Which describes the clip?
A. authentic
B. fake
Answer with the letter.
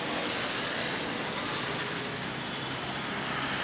A